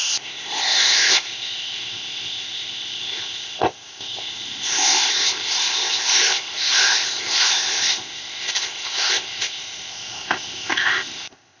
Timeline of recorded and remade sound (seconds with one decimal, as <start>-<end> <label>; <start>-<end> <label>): 0.0-11.6 remade